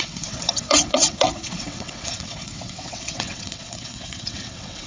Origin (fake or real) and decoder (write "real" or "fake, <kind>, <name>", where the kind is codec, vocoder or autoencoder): fake, vocoder, WaveNeXt